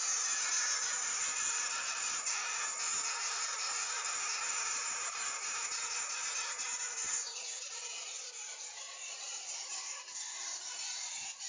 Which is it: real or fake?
real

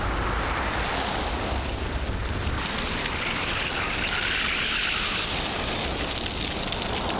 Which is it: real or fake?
real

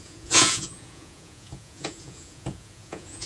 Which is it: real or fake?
fake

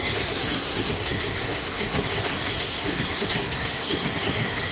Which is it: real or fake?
fake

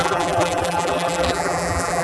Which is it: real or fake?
fake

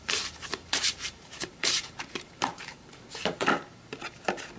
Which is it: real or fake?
fake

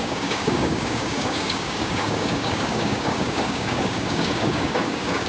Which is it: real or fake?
fake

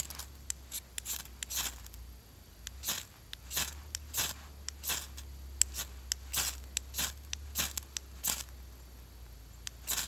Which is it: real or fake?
real